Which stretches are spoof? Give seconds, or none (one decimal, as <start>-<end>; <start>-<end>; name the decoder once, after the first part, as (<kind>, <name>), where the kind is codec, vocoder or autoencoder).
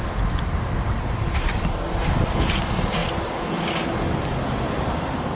none